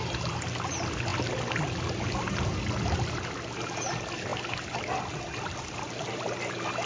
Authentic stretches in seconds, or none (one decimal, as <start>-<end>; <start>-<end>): 0.0-6.9